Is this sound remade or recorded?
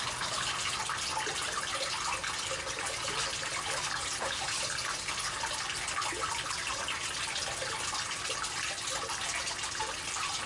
recorded